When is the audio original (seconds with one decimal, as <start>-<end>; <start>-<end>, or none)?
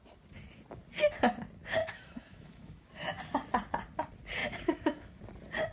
0.0-1.8; 2.9-4.4; 5.2-5.7